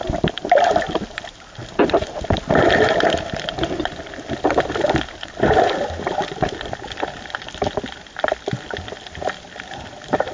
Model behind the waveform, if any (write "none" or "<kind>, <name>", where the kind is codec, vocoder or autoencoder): vocoder, BigVGAN v2